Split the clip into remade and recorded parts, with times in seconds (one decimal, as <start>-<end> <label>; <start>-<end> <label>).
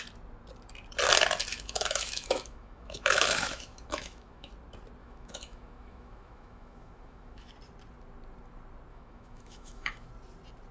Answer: 0.0-1.5 recorded; 1.5-4.5 remade; 4.5-5.0 recorded; 5.0-7.5 remade; 7.5-8.9 recorded; 8.9-10.1 remade; 10.1-10.7 recorded